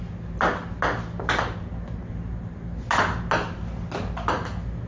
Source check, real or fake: real